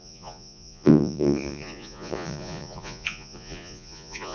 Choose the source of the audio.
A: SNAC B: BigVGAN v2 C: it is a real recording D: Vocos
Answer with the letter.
D